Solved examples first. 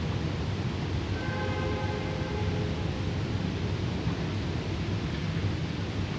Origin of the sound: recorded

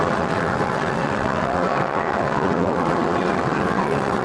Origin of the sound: remade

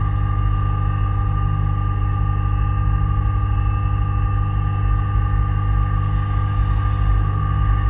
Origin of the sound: recorded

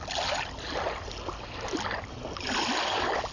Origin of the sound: recorded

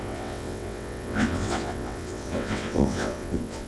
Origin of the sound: remade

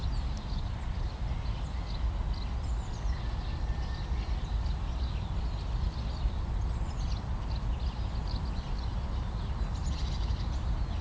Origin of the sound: recorded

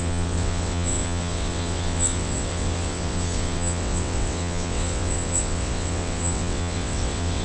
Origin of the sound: remade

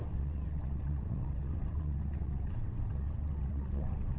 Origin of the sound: remade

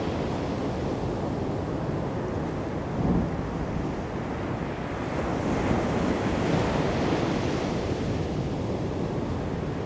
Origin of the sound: recorded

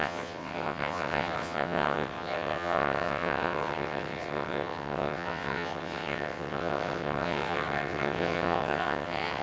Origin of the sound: remade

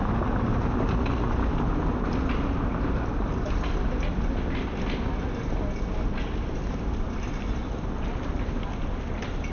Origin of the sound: recorded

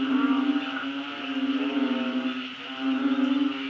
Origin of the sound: recorded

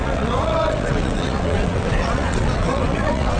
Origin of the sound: remade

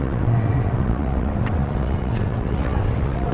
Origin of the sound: remade